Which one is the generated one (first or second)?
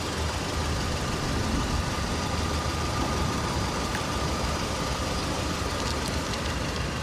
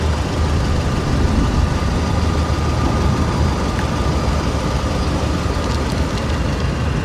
first